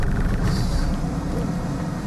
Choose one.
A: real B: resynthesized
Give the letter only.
B